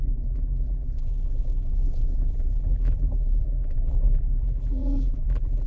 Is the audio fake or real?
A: fake